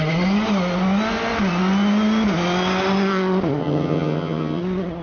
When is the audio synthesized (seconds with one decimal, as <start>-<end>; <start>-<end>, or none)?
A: 3.6-4.6